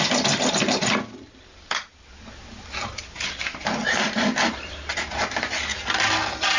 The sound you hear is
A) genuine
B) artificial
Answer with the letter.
A